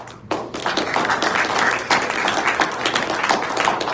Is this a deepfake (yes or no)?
no